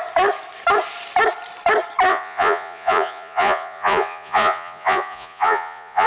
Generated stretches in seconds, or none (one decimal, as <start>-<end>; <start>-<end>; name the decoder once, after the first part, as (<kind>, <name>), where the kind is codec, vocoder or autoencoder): 2.1-6.1 (vocoder, Vocos)